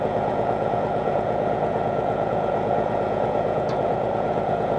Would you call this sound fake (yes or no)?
yes